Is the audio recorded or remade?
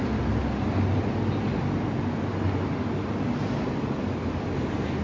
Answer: recorded